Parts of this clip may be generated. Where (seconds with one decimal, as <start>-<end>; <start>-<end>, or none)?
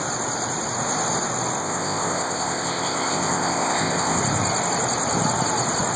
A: 1.6-4.2